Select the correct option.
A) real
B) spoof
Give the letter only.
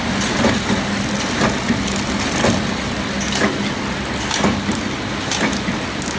A